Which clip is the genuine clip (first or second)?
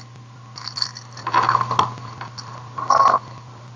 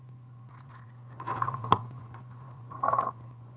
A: first